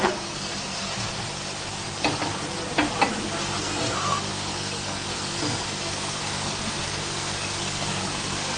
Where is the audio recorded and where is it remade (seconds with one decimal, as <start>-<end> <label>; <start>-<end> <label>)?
0.0-0.9 remade; 0.9-3.6 recorded; 3.6-8.6 remade

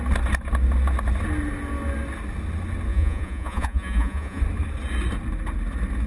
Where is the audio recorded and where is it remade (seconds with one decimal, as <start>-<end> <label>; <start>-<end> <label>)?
0.0-2.9 recorded; 2.9-4.4 remade; 4.4-6.1 recorded